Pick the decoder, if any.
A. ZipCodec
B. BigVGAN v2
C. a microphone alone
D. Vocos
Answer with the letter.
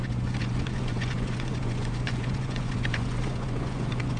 D